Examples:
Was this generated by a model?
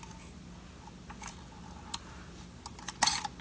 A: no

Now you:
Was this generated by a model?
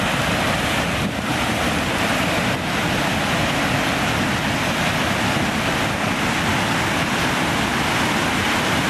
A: no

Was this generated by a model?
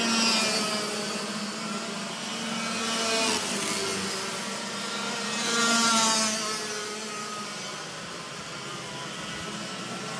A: no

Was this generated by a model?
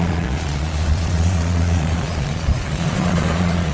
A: yes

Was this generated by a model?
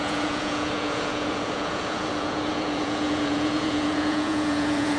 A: yes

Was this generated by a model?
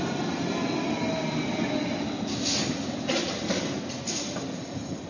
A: no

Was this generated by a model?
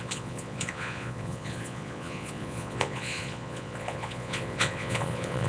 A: yes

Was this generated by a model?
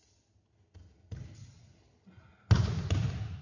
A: no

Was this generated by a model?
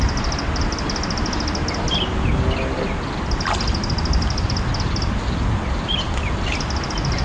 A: no